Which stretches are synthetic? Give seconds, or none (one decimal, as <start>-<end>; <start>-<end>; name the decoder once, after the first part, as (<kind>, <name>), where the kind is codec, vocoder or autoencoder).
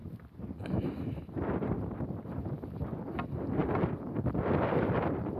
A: none